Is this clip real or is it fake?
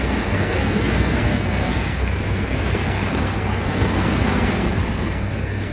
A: fake